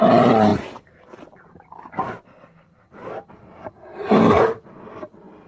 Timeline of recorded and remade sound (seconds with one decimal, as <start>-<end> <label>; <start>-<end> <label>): 0.0-5.5 recorded